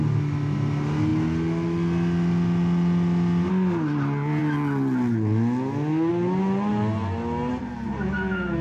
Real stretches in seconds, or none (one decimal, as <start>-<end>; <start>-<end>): 0.0-8.6